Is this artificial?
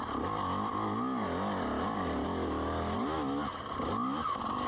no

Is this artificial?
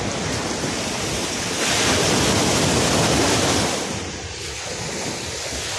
no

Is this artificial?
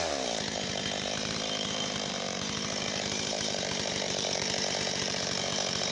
yes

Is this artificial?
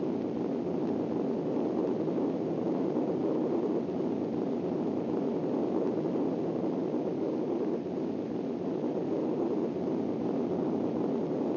no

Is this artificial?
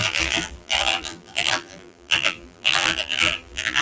yes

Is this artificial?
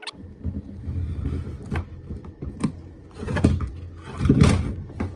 no